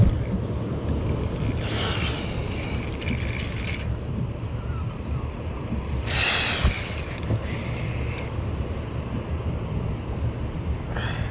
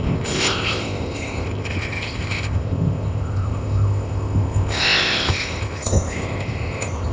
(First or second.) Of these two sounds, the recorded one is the first